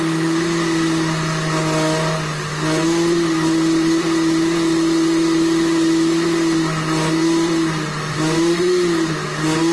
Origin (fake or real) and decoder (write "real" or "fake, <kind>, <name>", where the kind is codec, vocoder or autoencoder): real